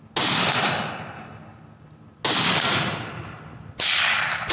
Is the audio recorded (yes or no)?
yes